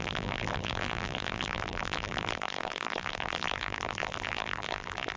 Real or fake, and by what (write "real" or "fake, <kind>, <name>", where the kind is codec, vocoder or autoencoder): fake, vocoder, BigVGAN v2